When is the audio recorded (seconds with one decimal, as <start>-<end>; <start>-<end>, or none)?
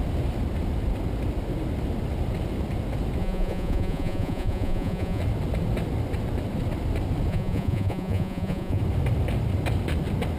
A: 0.0-3.2; 5.2-7.3; 8.8-10.4